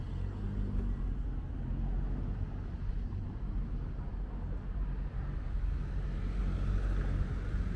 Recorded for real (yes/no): yes